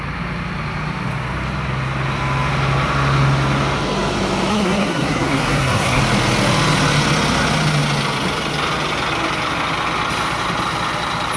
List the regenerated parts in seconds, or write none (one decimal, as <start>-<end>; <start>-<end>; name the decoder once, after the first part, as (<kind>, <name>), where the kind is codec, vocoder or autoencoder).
4.5-6.0 (codec, SNAC)